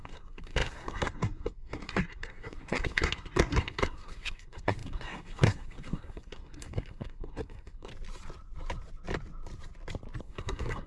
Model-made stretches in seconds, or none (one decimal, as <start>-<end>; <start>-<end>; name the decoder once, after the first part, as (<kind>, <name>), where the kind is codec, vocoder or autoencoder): 0.0-7.9 (codec, SNAC); 10.2-10.9